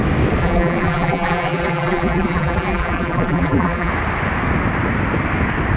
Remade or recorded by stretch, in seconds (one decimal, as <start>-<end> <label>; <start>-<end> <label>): 0.0-0.4 recorded; 0.4-3.9 remade; 3.9-5.8 recorded